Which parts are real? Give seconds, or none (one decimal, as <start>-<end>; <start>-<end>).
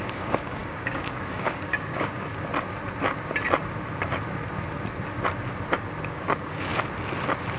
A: 2.5-6.1; 6.7-7.6